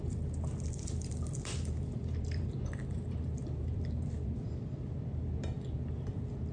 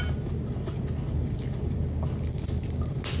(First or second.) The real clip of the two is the second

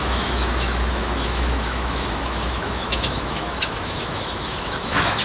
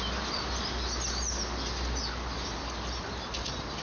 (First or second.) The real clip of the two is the second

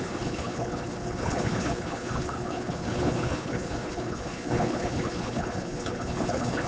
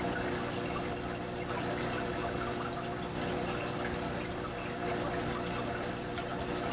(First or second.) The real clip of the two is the second